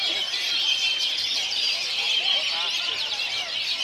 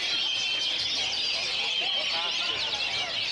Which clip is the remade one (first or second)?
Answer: first